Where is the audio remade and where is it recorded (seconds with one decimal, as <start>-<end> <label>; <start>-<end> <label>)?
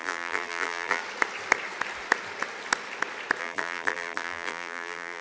0.0-1.0 remade; 1.0-3.4 recorded; 3.4-5.2 remade